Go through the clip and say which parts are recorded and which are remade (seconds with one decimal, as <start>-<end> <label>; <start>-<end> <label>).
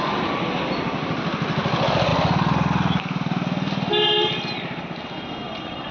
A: 0.0-5.9 recorded